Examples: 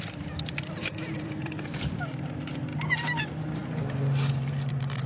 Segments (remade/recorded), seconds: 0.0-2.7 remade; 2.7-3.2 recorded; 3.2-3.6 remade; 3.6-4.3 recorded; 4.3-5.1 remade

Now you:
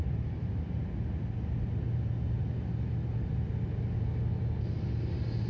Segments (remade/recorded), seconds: 0.0-0.8 remade; 0.8-5.5 recorded

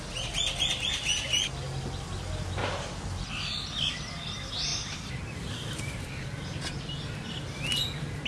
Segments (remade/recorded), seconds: 0.0-2.6 recorded; 2.6-3.3 remade; 3.3-4.7 recorded; 4.7-6.0 remade; 6.0-8.3 recorded

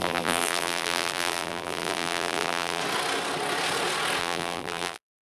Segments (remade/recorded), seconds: 0.0-2.8 remade; 2.8-4.2 recorded; 4.2-5.2 remade

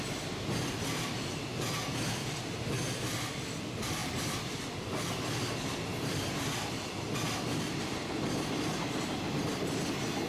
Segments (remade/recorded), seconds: 0.0-5.9 recorded; 5.9-7.1 remade; 7.1-10.3 recorded